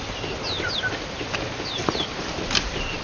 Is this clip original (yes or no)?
yes